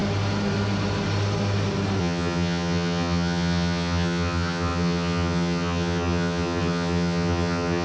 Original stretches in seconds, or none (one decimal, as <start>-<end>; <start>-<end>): 0.0-2.0